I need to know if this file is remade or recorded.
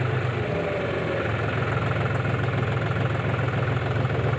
recorded